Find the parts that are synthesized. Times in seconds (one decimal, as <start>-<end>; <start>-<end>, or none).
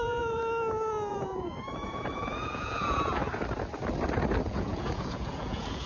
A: 0.0-0.4; 1.1-3.2; 4.5-5.9